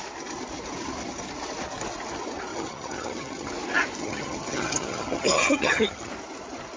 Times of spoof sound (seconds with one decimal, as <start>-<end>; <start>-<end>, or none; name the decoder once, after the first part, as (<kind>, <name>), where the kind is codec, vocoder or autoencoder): 2.5-3.5 (vocoder, HiFi-GAN); 4.0-6.1